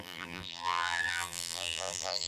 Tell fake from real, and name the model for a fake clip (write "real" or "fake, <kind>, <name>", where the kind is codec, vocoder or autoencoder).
fake, vocoder, BigVGAN v2